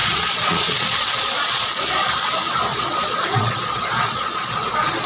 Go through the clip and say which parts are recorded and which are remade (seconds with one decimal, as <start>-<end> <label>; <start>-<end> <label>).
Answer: 0.0-1.7 remade; 1.7-2.7 recorded; 2.7-5.1 remade